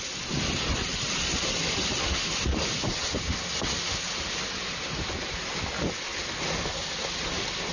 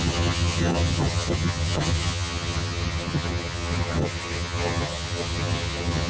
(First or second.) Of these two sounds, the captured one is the first